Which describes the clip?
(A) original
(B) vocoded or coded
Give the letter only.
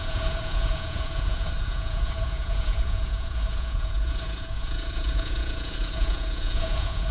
B